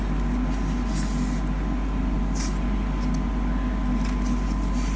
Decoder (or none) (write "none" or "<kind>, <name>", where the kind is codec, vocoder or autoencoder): none